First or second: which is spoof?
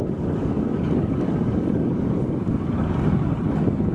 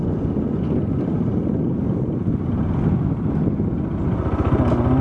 first